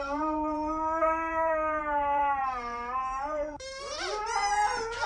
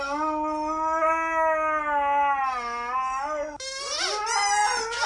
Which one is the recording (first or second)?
second